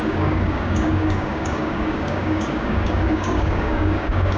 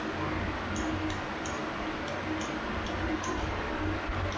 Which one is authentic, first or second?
second